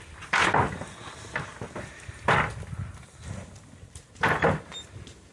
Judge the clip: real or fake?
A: real